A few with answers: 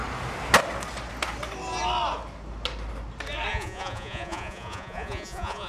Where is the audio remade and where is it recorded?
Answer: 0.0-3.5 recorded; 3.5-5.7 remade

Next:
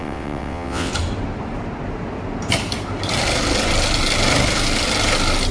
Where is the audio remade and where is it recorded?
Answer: 0.0-0.9 remade; 0.9-5.5 recorded

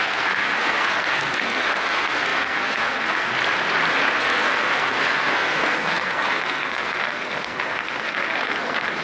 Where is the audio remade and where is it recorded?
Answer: 0.0-3.3 remade; 3.3-4.2 recorded; 4.2-9.0 remade

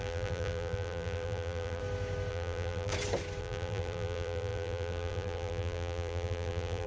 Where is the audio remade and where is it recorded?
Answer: 0.0-1.8 remade; 1.8-2.3 recorded; 2.3-2.9 remade; 2.9-3.4 recorded; 3.4-6.9 remade